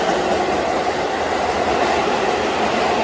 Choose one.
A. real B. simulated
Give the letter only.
A